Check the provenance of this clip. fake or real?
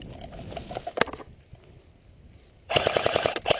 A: real